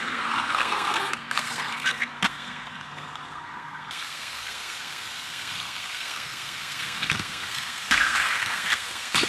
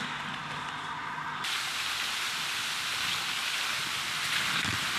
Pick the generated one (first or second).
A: first